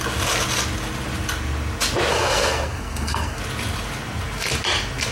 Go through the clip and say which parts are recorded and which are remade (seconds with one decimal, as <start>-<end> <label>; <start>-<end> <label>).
0.0-2.1 recorded; 2.1-3.4 remade; 3.4-5.1 recorded